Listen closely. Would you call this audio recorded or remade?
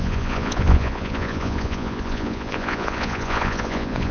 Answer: remade